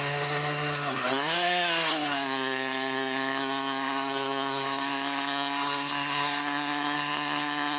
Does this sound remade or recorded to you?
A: remade